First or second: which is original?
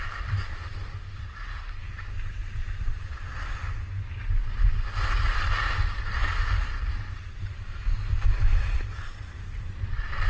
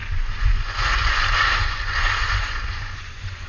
first